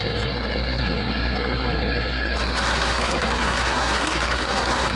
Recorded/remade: remade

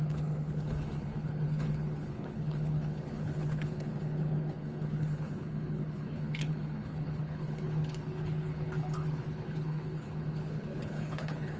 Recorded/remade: remade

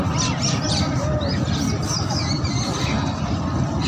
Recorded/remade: recorded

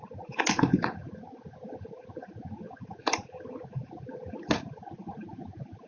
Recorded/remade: recorded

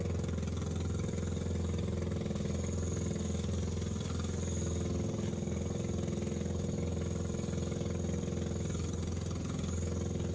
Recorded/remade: recorded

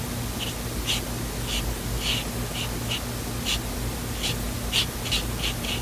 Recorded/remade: recorded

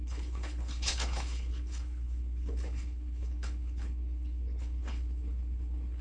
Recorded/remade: remade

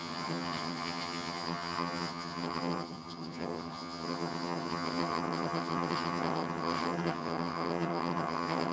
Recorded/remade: remade